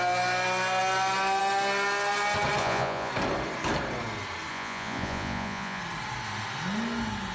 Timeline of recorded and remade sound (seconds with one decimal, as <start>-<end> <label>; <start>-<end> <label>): 0.0-2.6 recorded; 2.6-3.1 remade; 3.1-4.5 recorded; 4.5-5.8 remade; 5.8-7.3 recorded